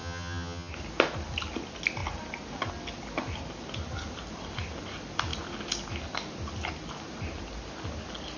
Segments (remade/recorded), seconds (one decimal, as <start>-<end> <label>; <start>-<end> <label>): 0.0-0.7 remade; 0.7-8.4 recorded